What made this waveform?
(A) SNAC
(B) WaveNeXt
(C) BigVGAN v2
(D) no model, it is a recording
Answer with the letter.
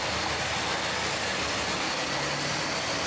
D